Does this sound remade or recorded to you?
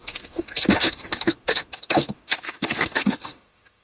remade